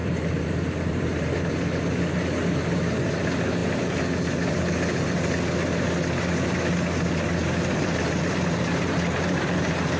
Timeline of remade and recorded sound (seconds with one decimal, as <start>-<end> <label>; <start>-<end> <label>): 0.0-1.4 remade; 1.4-7.4 recorded; 7.4-9.6 remade; 9.6-10.0 recorded